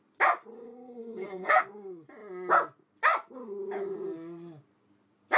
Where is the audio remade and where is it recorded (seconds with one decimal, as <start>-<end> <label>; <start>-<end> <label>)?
0.0-0.6 recorded; 0.6-1.6 remade; 1.6-5.4 recorded

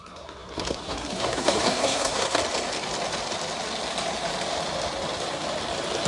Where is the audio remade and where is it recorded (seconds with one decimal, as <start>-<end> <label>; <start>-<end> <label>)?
0.0-2.4 remade; 2.4-6.1 recorded

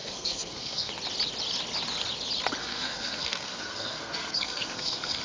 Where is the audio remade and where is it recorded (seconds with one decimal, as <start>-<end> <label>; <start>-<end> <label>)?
0.0-0.9 remade; 0.9-2.6 recorded; 2.6-5.2 remade